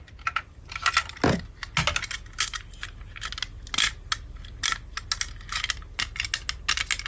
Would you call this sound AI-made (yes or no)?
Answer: no